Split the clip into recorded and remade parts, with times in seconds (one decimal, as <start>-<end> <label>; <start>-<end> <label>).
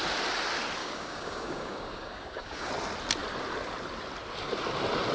0.0-0.8 recorded; 0.8-2.7 remade; 2.7-5.1 recorded